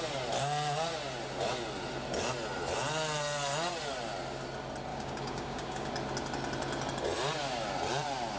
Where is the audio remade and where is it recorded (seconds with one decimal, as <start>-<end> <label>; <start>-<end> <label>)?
0.0-4.9 recorded; 4.9-5.9 remade; 5.9-8.4 recorded